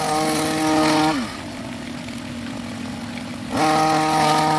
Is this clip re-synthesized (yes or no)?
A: no